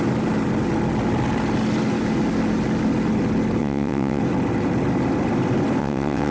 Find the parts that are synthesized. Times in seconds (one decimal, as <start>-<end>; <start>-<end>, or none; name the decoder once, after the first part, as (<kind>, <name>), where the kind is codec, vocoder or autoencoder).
3.6-4.2 (vocoder, WaveNeXt); 5.8-6.3